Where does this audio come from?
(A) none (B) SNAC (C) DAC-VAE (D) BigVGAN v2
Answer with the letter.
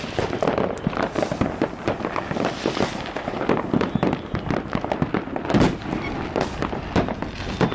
A